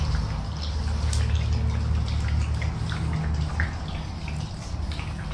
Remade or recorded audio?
recorded